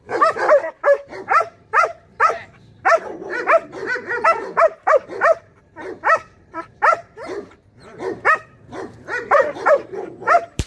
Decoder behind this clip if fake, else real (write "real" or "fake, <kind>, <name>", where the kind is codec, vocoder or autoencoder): fake, vocoder, BigVGAN v2